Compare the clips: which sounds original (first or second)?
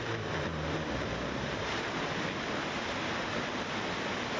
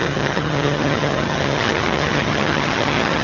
first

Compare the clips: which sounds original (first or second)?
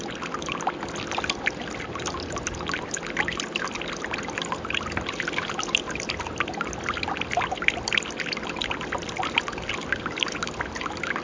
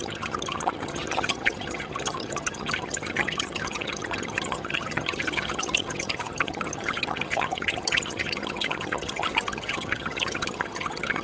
first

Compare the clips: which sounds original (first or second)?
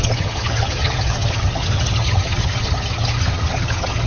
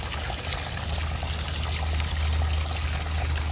second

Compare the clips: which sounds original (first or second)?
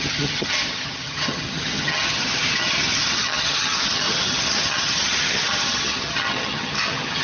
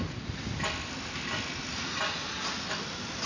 second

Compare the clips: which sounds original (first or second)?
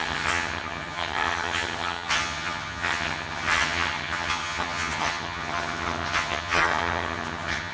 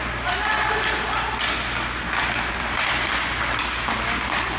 second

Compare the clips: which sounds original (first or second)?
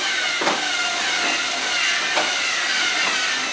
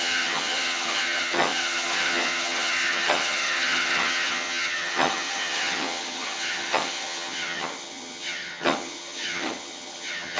first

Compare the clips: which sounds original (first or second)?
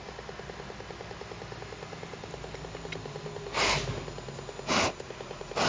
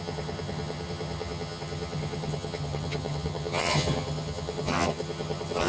first